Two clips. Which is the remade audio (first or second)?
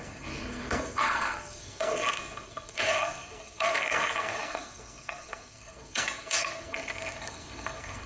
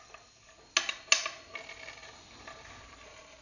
first